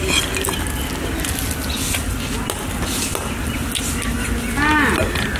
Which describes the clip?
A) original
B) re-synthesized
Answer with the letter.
A